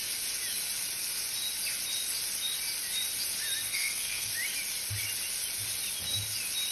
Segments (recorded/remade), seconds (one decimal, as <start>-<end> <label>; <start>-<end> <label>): 0.0-3.7 recorded; 3.7-4.3 remade; 4.3-6.7 recorded